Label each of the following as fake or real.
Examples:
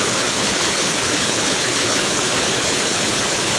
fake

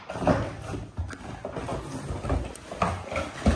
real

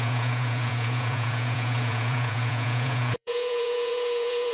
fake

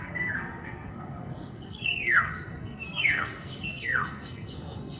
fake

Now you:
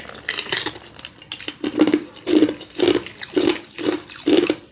fake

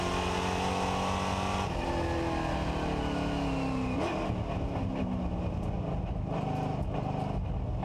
real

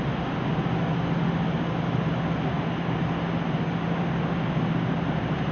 real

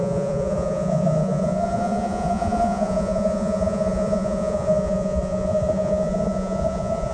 fake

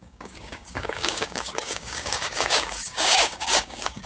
fake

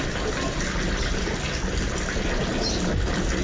real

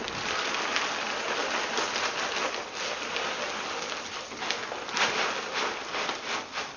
real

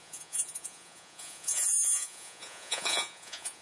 fake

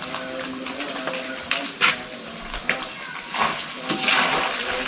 real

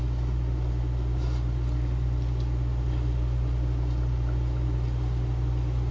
real